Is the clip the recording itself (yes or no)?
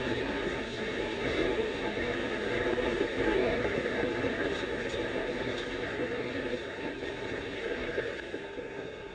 no